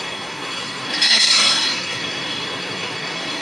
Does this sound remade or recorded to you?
remade